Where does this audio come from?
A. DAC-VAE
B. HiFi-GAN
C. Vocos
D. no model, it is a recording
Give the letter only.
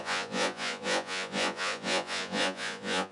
C